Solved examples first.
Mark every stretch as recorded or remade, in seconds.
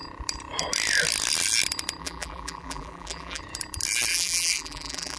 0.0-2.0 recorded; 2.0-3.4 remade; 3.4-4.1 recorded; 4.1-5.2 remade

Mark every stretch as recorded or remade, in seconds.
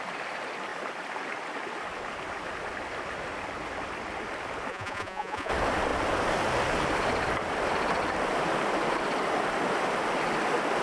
0.0-4.7 recorded; 4.7-5.5 remade; 5.5-10.8 recorded